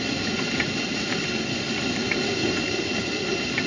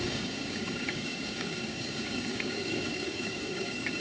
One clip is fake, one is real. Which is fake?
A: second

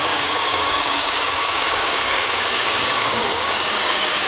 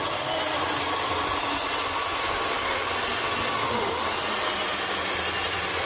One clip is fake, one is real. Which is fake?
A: first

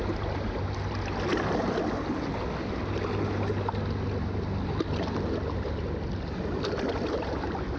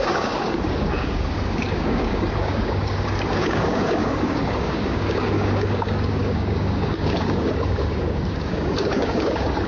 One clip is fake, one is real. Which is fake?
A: second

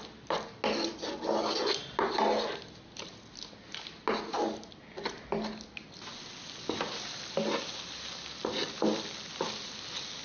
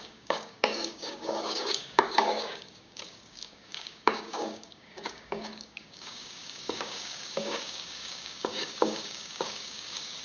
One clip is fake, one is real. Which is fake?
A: second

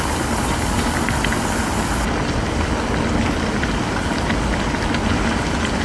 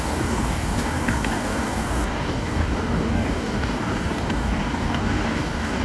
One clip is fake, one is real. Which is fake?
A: second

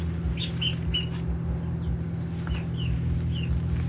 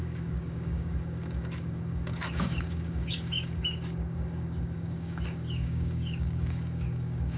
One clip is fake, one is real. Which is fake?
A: second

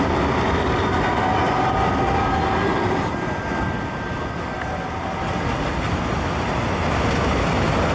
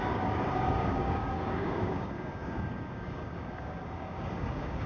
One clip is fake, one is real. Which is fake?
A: second